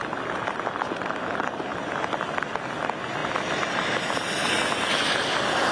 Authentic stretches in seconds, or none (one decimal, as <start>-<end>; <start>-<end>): 0.0-5.7

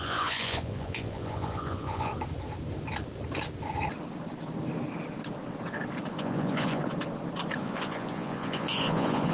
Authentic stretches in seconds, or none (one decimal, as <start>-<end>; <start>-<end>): 2.1-6.2; 6.8-7.6

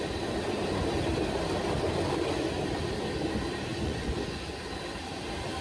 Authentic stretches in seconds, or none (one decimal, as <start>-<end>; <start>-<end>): 0.0-3.7; 4.6-5.6

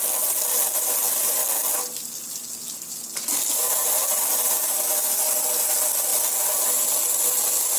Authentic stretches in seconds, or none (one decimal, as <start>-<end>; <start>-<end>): 0.0-7.8

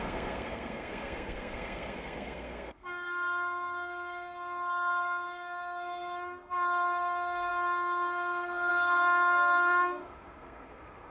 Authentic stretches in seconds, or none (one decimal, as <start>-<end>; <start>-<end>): none

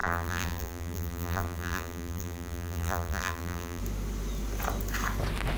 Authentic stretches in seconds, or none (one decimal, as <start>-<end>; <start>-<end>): 3.8-5.6